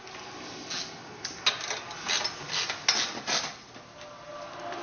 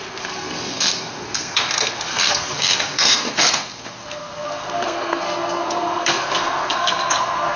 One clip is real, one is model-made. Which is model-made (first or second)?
second